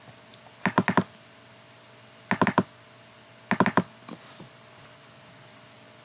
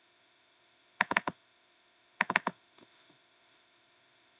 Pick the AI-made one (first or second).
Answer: second